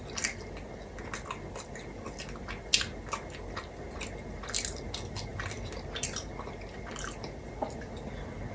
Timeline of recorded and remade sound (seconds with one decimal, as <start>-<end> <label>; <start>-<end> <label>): 0.0-8.5 recorded